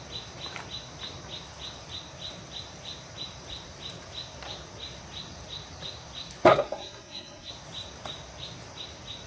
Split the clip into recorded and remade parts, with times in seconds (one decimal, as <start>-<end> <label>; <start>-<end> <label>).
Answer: 0.0-6.5 recorded; 6.5-7.5 remade; 7.5-9.3 recorded